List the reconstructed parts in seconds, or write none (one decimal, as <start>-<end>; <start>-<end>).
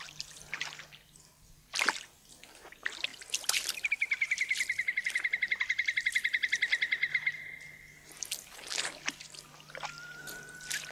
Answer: none